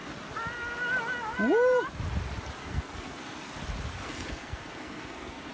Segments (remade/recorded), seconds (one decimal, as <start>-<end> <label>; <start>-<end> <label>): 0.0-2.6 recorded; 2.6-3.5 remade; 3.5-3.9 recorded; 3.9-5.5 remade